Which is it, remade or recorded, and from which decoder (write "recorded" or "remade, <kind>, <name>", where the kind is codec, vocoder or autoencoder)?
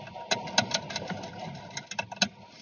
recorded